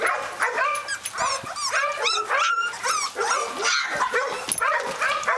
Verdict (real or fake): real